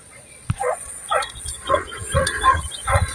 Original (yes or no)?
no